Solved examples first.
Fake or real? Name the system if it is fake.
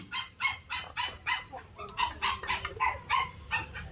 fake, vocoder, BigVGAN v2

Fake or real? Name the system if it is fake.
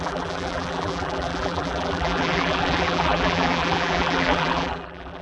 fake, vocoder, BigVGAN v2